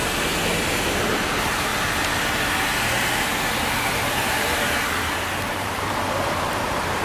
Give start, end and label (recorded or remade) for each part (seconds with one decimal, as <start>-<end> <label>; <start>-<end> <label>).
0.0-0.7 recorded; 0.7-1.7 remade; 1.7-3.9 recorded; 3.9-7.0 remade